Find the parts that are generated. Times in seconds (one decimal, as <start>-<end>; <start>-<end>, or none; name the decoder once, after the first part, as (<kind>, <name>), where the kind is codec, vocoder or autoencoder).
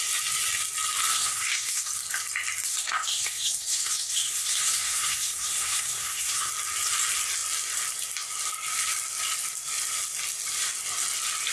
1.1-1.9 (codec, SNAC); 2.7-6.5